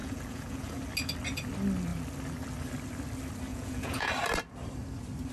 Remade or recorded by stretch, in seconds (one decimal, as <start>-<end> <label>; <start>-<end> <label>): 0.0-0.8 remade; 0.8-3.5 recorded; 3.5-4.1 remade; 4.1-5.3 recorded